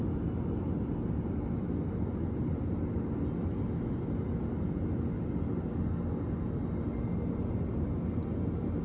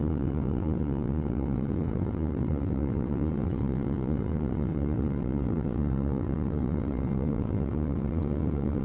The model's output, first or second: second